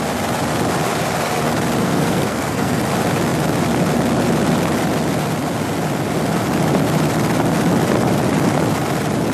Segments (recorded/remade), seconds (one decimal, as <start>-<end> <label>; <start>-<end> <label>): 0.0-1.8 recorded; 1.8-2.8 remade; 2.8-9.3 recorded

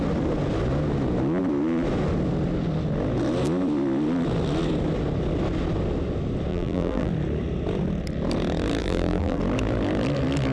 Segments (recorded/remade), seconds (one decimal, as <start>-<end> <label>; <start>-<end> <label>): 0.0-6.5 recorded; 6.5-7.1 remade; 7.1-8.8 recorded; 8.8-9.4 remade; 9.4-10.5 recorded

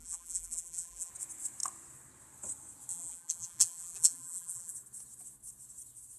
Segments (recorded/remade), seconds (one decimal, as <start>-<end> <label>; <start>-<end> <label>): 0.0-1.1 remade; 1.1-2.9 recorded; 2.9-4.7 remade; 4.7-6.2 recorded

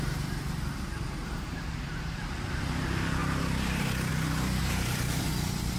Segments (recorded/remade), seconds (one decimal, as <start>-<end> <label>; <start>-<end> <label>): 0.0-1.2 recorded; 1.2-2.2 remade; 2.2-3.2 recorded; 3.2-4.1 remade; 4.1-4.6 recorded; 4.6-5.2 remade; 5.2-5.8 recorded